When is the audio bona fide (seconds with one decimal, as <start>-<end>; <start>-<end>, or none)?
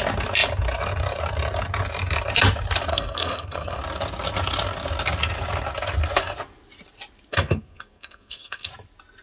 0.0-2.9; 3.8-7.3; 8.7-9.2